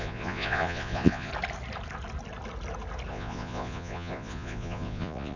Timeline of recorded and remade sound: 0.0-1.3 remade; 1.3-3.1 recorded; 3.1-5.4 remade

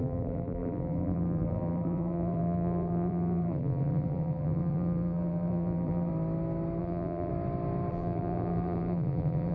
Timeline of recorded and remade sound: 0.0-6.1 remade; 6.1-6.8 recorded; 6.8-7.3 remade; 7.3-7.9 recorded; 7.9-9.5 remade